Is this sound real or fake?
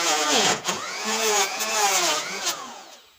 fake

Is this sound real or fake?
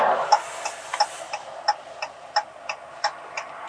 real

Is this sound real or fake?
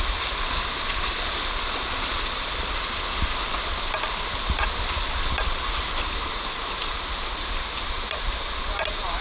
real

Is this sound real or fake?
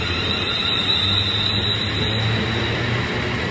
real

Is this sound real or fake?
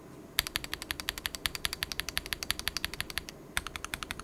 real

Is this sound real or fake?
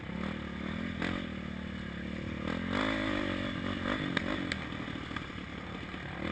real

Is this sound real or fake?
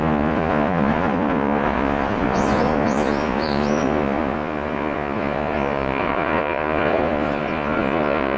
fake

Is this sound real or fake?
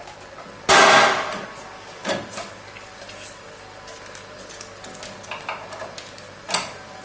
real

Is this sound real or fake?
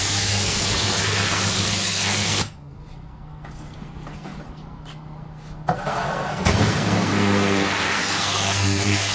fake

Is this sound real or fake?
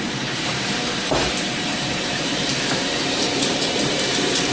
fake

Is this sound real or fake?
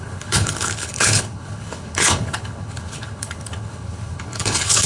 fake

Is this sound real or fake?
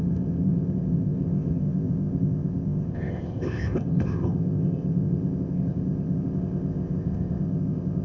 fake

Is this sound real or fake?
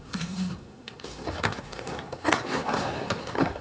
fake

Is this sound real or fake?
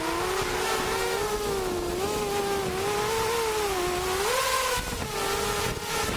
real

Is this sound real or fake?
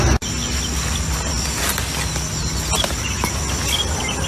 real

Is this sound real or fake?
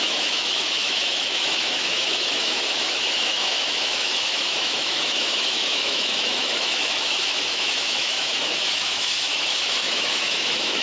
fake